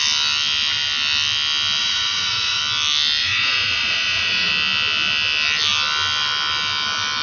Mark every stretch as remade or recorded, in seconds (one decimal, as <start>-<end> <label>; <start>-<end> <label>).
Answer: 0.0-1.8 recorded; 1.8-2.6 remade; 2.6-3.2 recorded; 3.2-4.5 remade; 4.5-7.2 recorded